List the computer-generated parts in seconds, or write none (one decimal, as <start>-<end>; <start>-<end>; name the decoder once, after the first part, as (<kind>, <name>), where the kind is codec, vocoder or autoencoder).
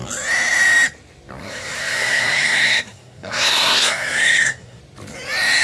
1.4-4.8 (codec, SNAC)